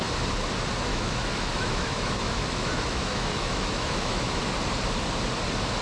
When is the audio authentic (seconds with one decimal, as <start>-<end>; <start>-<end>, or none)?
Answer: 0.0-0.9; 4.4-5.8